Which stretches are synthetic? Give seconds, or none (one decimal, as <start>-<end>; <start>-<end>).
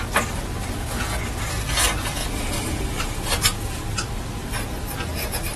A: 2.2-3.0